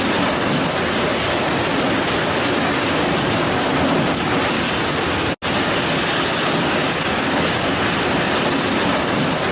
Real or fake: real